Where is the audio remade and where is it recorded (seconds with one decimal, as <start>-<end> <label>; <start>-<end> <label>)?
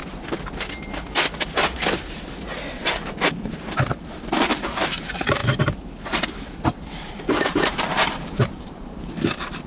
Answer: 0.0-2.7 recorded; 2.7-5.4 remade; 5.4-7.1 recorded; 7.1-9.7 remade